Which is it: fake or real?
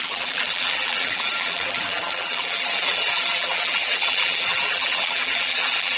fake